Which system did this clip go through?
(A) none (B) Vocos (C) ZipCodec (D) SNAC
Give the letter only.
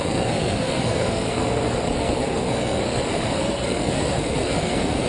D